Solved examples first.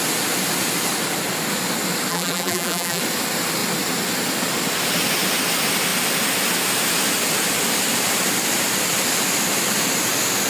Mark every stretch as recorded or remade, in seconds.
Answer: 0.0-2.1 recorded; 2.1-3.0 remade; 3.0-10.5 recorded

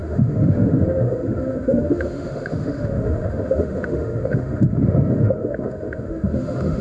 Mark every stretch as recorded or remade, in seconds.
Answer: 0.0-6.8 remade

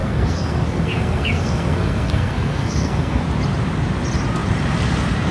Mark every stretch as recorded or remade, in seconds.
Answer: 0.0-3.2 remade; 3.2-5.3 recorded

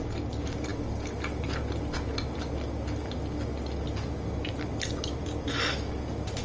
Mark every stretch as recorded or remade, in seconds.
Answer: 0.0-6.4 recorded